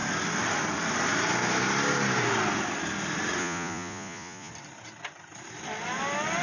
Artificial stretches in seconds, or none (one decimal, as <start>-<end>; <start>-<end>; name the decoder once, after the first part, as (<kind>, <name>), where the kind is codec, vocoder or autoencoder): 3.4-4.5 (vocoder, Vocos)